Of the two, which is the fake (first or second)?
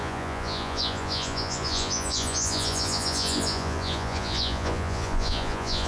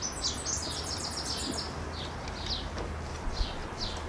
first